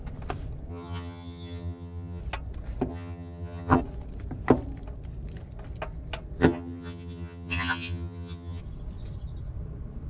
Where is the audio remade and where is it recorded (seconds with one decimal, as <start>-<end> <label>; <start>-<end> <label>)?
0.0-0.7 recorded; 0.7-2.2 remade; 2.2-2.9 recorded; 2.9-3.8 remade; 3.8-6.4 recorded; 6.4-8.6 remade; 8.6-10.1 recorded